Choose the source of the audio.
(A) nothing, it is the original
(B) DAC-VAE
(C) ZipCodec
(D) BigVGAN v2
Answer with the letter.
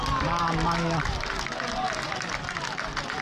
A